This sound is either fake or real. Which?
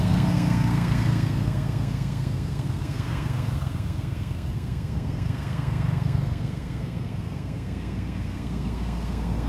fake